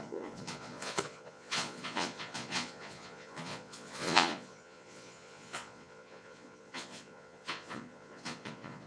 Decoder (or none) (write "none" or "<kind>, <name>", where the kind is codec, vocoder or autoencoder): vocoder, Vocos